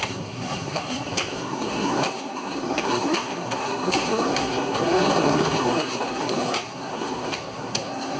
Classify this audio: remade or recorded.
remade